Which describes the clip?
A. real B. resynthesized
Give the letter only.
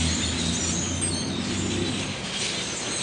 A